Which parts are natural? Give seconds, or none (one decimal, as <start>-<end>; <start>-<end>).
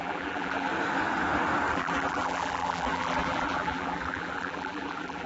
0.7-1.7